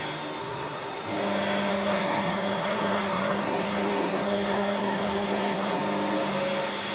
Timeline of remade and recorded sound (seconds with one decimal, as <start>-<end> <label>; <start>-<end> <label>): 0.0-0.4 recorded; 0.4-1.0 remade; 1.0-1.7 recorded; 1.7-5.8 remade; 5.8-6.9 recorded